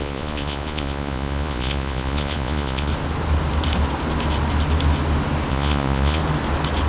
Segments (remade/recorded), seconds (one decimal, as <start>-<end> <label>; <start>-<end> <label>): 0.0-2.9 remade; 2.9-5.5 recorded; 5.5-6.2 remade; 6.2-6.9 recorded